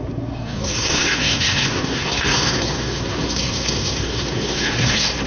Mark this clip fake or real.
fake